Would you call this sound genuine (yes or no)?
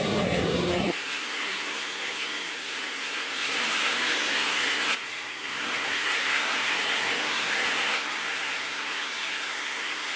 no